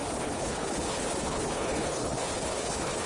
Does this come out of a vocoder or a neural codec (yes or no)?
yes